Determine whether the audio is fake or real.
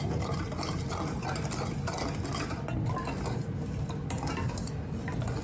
real